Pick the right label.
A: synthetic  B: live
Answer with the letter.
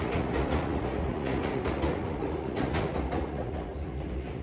A